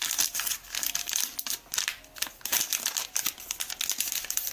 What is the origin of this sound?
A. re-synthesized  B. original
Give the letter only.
B